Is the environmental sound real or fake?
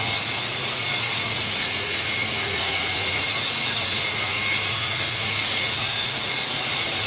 fake